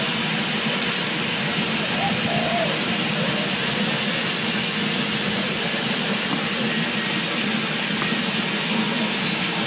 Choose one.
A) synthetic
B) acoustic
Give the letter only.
B